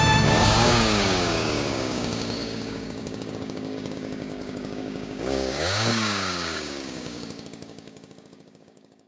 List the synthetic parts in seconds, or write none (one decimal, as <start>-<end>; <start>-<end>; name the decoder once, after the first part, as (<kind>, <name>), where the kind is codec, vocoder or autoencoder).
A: 0.0-9.1 (codec, DAC)